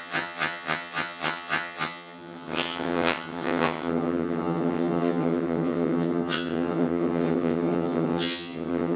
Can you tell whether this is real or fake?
fake